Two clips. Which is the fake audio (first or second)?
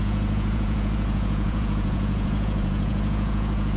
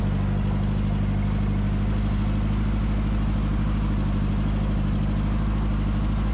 first